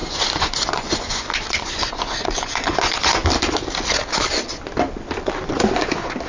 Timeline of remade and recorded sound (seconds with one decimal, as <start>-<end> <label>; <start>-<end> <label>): 0.0-3.2 remade; 3.2-6.3 recorded